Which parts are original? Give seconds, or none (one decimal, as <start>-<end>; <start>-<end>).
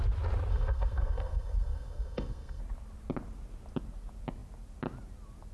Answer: 0.0-0.5; 2.6-5.5